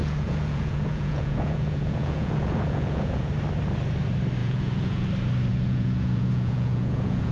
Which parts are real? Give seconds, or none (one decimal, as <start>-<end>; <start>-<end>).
3.3-4.4; 5.1-5.5